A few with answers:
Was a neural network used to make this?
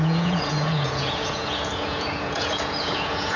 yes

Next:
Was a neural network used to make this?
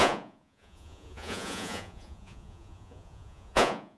yes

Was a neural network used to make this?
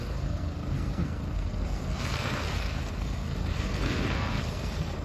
yes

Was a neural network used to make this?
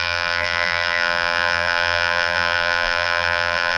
yes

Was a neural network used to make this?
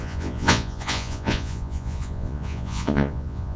yes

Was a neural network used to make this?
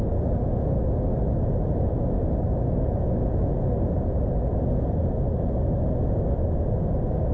no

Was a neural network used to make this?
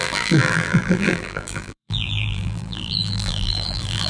yes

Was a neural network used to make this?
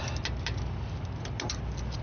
no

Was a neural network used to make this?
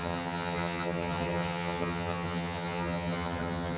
yes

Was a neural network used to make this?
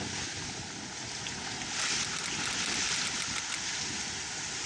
no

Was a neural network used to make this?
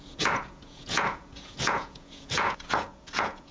yes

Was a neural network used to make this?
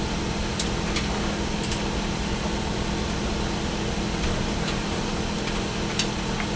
no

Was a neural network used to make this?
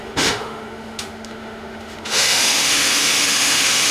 yes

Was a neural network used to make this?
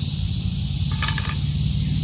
no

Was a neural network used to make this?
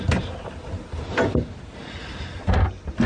no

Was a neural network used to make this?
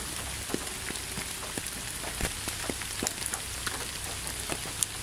no